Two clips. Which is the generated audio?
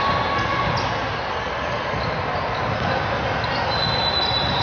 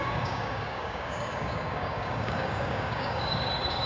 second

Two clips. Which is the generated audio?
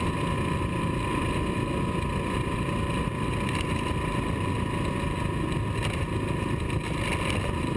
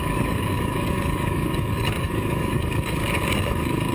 second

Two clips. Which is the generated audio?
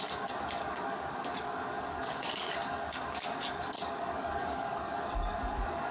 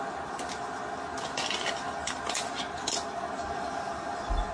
first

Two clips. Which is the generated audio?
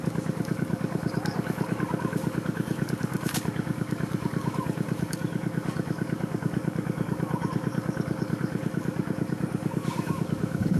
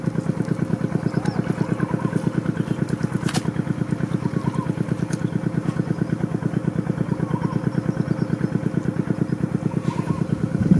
first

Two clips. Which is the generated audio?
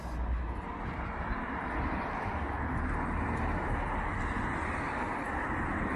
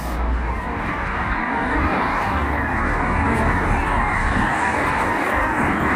second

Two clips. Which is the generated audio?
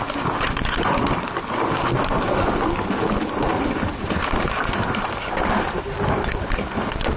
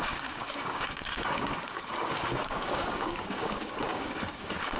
second